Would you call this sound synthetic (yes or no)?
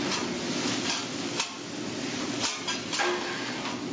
no